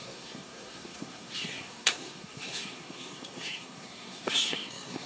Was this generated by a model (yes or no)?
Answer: yes